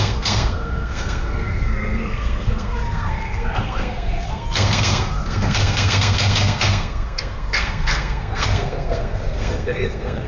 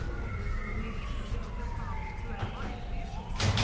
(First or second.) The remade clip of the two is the first